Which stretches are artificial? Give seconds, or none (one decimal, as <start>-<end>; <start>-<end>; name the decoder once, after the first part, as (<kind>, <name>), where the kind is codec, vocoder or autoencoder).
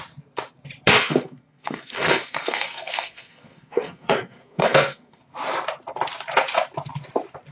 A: 1.0-5.2 (codec, SNAC)